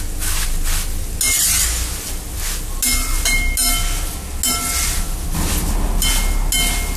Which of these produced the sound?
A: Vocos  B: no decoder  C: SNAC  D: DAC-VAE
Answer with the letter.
B